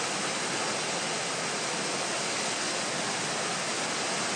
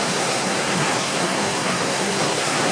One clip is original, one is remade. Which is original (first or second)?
first